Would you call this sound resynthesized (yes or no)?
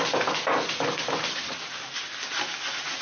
no